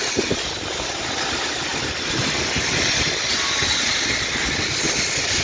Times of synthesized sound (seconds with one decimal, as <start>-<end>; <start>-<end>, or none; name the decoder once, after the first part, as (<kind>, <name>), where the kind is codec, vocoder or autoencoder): none